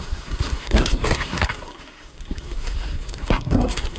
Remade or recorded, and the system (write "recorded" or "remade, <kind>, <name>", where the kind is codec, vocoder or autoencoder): remade, codec, SNAC